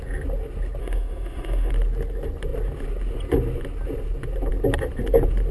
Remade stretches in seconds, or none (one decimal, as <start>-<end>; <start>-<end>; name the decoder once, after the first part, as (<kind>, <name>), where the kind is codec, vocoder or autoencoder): 0.8-1.7 (autoencoder, DAC-VAE)